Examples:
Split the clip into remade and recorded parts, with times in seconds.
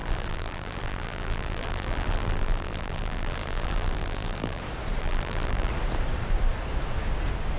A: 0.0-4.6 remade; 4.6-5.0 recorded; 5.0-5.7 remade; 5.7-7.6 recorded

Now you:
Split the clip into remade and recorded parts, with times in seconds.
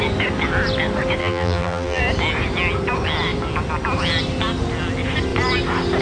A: 0.0-1.2 recorded; 1.2-2.0 remade; 2.0-6.0 recorded